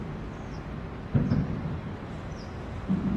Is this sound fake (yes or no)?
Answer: no